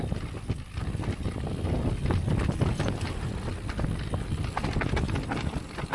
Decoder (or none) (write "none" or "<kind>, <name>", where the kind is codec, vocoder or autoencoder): none